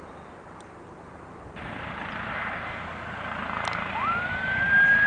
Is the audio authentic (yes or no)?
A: yes